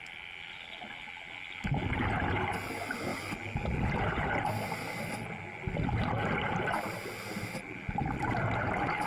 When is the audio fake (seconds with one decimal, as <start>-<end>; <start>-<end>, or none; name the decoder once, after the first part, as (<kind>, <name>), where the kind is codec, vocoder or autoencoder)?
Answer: none